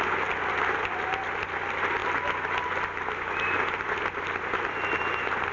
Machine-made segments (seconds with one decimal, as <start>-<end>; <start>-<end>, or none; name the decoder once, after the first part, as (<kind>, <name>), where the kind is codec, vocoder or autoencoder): none